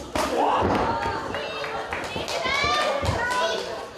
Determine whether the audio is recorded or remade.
recorded